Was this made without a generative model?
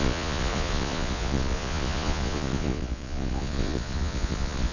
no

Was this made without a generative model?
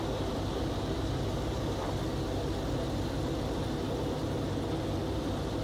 yes